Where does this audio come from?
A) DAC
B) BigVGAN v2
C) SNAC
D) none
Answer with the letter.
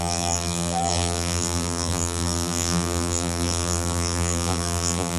B